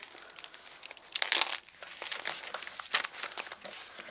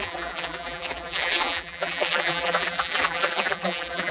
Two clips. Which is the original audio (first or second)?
first